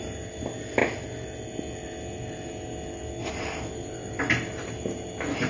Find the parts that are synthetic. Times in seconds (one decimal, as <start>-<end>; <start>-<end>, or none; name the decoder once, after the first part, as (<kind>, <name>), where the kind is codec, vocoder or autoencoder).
none